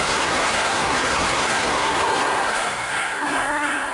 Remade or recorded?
remade